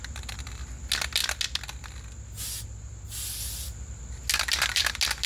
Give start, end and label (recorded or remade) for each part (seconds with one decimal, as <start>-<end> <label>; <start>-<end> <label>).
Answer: 0.0-5.3 recorded